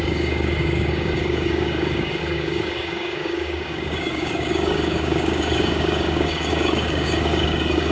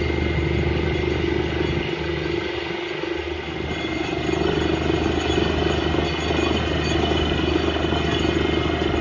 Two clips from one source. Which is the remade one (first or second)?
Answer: first